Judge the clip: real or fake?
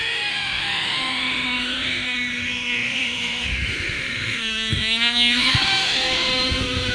fake